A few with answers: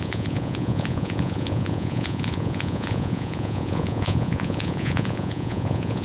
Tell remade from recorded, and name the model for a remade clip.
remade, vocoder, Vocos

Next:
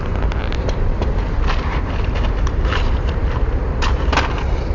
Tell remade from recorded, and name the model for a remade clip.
recorded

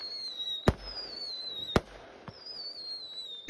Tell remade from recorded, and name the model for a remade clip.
recorded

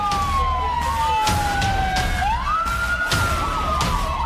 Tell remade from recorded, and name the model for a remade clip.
recorded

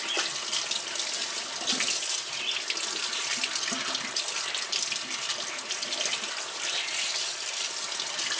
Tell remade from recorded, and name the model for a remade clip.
recorded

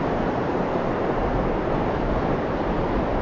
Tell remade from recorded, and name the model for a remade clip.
recorded